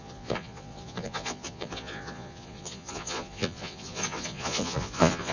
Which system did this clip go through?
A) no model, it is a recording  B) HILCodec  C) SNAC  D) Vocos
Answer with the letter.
D